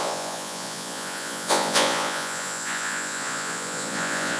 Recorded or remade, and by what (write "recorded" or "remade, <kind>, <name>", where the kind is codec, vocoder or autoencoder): remade, vocoder, Vocos